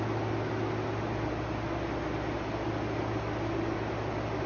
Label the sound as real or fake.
real